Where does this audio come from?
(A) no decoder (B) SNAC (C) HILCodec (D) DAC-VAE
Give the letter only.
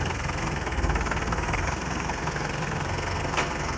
B